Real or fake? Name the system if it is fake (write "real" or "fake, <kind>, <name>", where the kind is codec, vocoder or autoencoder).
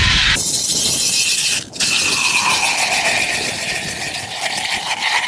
real